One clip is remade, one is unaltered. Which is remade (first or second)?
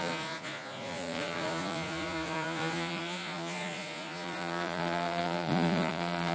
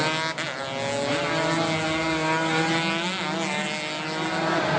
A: first